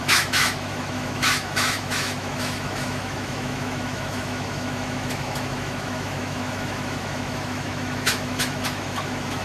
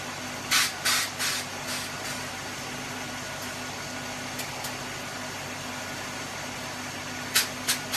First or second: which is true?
second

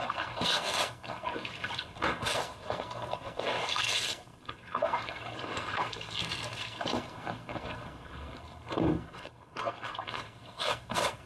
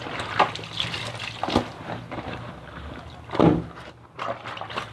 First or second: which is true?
second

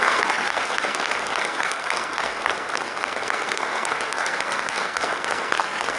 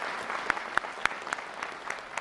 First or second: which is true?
second